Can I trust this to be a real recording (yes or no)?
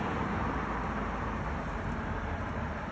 no